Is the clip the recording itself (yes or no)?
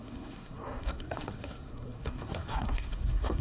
no